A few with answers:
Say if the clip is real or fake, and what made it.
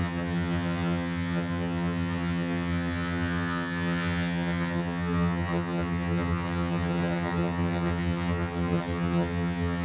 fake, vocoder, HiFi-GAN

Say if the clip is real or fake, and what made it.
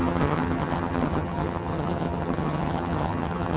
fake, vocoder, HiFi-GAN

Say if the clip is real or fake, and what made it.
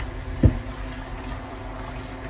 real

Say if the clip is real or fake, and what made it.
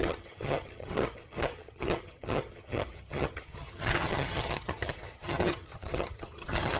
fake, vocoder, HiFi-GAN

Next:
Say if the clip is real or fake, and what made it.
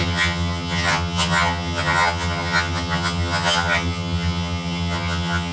fake, vocoder, HiFi-GAN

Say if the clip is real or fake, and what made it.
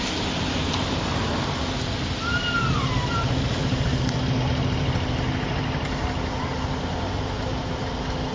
real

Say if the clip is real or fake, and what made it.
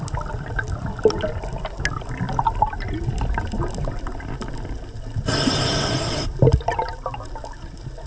real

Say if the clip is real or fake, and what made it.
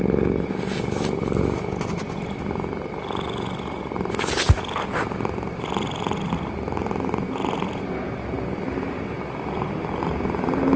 real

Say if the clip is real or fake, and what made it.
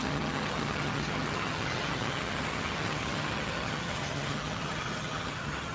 fake, vocoder, HiFi-GAN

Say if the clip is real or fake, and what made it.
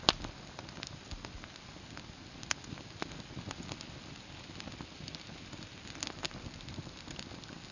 real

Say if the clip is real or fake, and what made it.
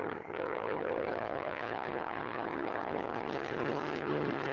fake, vocoder, HiFi-GAN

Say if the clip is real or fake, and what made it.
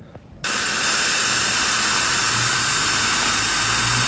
real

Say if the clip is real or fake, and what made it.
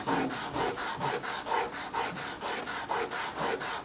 real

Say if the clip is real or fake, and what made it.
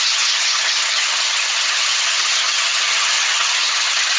fake, vocoder, HiFi-GAN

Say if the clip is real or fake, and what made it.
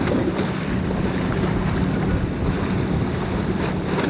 real